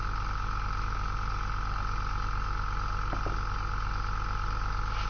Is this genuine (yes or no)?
yes